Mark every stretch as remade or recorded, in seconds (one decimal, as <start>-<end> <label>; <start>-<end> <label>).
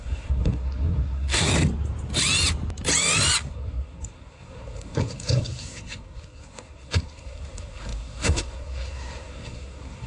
0.0-1.5 remade; 1.5-3.5 recorded; 3.5-10.1 remade